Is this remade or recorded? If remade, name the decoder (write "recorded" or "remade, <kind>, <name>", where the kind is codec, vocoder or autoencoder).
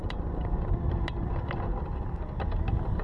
recorded